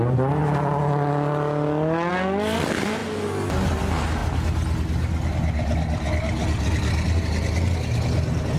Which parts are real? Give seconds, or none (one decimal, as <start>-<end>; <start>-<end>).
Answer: 0.0-8.6